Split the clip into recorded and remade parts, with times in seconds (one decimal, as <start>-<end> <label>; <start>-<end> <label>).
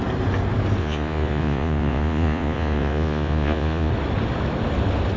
0.0-0.8 recorded; 0.8-3.9 remade; 3.9-5.2 recorded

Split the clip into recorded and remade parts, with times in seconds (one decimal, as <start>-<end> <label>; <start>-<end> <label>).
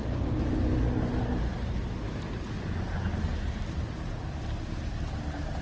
0.0-5.6 recorded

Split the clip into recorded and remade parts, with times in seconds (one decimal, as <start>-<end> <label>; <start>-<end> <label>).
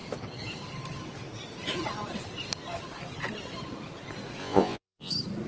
0.0-4.4 recorded; 4.4-5.1 remade; 5.1-5.5 recorded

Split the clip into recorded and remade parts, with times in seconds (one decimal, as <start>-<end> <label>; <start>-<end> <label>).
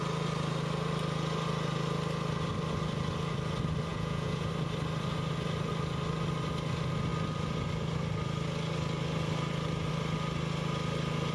0.0-3.9 recorded; 3.9-4.5 remade; 4.5-11.3 recorded